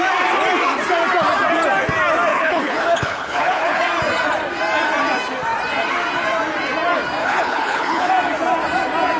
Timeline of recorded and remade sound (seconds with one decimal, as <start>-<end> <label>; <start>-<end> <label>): 0.0-2.3 recorded; 2.3-3.8 remade; 3.8-7.2 recorded; 7.2-8.1 remade; 8.1-9.2 recorded